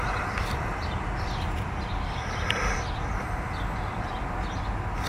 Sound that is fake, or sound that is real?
real